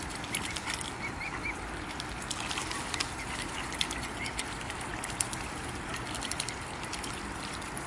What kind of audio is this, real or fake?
real